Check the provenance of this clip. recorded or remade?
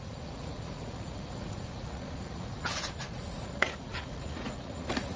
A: remade